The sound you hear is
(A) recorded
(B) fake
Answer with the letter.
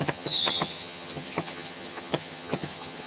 B